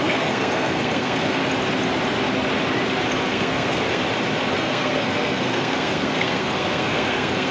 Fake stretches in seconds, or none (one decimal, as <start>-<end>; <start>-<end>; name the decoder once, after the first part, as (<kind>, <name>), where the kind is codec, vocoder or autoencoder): 0.0-1.4 (codec, SNAC); 3.3-4.0; 4.5-7.5